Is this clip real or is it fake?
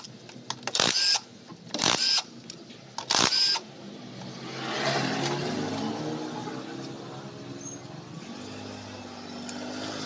real